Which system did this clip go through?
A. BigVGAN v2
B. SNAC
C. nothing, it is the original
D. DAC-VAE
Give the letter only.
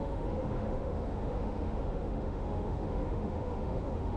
D